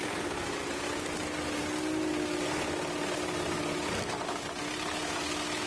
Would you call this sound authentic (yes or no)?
yes